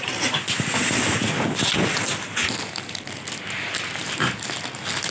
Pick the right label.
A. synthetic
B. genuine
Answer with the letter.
B